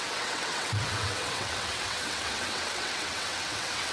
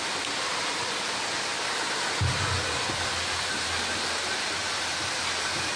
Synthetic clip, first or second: first